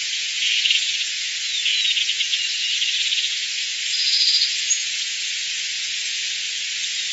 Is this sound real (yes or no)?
no